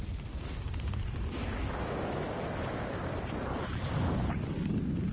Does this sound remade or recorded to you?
recorded